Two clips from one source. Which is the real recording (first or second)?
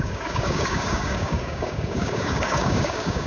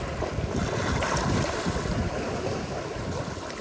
second